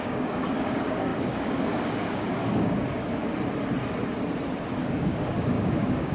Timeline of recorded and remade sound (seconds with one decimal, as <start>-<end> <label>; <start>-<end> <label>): 0.0-3.3 remade; 3.3-4.8 recorded; 4.8-6.1 remade

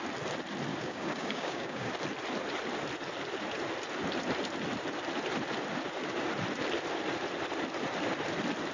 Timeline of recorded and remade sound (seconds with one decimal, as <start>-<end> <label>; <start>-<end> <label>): 0.0-0.7 recorded; 0.7-1.9 remade; 1.9-8.7 recorded

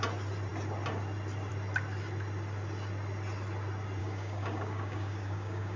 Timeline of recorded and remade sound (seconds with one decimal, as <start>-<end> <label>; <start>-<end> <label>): 0.0-4.0 recorded; 4.0-5.8 remade

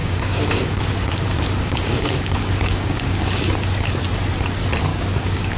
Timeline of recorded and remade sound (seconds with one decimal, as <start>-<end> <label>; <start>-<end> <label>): 0.0-3.4 remade; 3.4-4.9 recorded; 4.9-5.6 remade

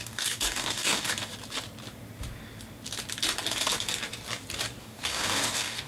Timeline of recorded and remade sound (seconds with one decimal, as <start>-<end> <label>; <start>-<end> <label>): 0.0-1.3 remade; 1.3-4.8 recorded; 4.8-5.9 remade

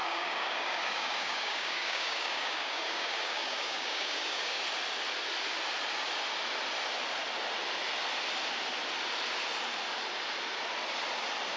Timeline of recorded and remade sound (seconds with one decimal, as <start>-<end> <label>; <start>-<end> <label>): 0.0-4.6 remade; 4.6-11.6 recorded